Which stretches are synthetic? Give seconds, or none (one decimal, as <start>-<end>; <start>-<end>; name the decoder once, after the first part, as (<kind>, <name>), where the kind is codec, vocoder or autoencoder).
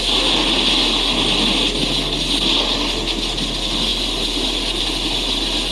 none